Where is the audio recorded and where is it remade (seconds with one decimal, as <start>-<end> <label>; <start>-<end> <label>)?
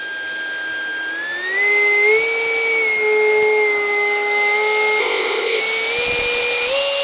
0.0-5.0 recorded; 5.0-5.6 remade; 5.6-7.0 recorded